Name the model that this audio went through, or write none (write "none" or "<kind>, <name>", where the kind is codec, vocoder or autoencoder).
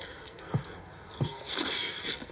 codec, SNAC